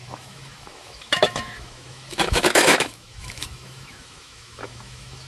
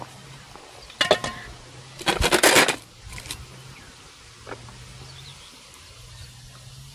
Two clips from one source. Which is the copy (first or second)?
first